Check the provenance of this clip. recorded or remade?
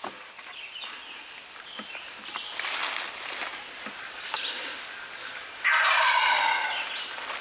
recorded